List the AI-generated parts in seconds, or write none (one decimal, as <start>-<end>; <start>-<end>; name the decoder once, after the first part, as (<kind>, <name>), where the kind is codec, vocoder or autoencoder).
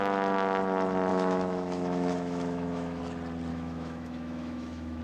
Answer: 1.1-3.0 (autoencoder, DAC-VAE); 3.5-5.0